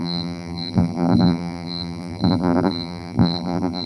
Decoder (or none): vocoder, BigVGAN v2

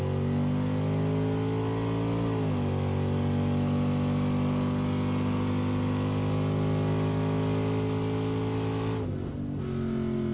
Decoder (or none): none